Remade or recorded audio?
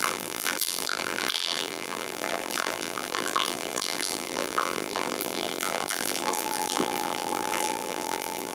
remade